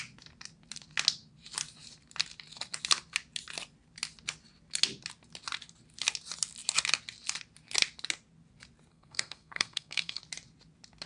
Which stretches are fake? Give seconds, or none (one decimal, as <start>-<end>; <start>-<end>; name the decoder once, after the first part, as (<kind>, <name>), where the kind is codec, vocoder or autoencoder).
8.9-10.2 (codec, SNAC)